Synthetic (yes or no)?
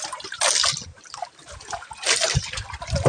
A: no